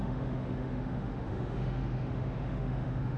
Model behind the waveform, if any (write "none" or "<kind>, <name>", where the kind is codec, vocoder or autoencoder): autoencoder, DAC-VAE